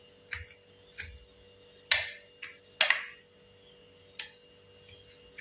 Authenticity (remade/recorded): recorded